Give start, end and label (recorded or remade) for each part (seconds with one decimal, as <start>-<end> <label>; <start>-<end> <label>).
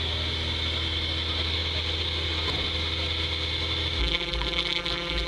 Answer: 0.0-4.0 recorded; 4.0-5.3 remade